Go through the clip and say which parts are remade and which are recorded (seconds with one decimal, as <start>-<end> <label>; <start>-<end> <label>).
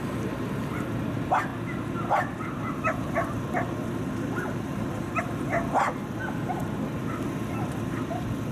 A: 0.0-8.5 recorded